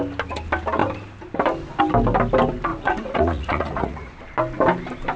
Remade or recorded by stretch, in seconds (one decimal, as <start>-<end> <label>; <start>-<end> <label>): 0.0-2.7 recorded; 2.7-4.1 remade; 4.1-5.2 recorded